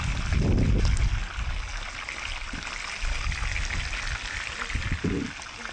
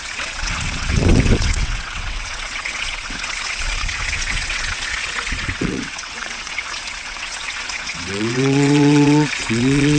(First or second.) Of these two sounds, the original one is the first